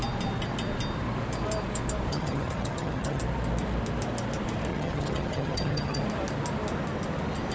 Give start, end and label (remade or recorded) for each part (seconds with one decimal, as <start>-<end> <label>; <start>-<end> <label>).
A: 0.0-2.1 recorded; 2.1-3.2 remade; 3.2-4.7 recorded; 4.7-6.0 remade; 6.0-7.5 recorded